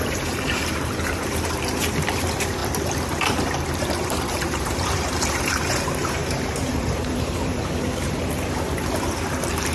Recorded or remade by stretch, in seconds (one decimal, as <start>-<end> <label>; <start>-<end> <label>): 0.0-2.6 remade; 2.6-3.8 recorded; 3.8-9.7 remade